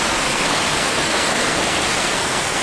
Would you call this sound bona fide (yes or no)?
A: no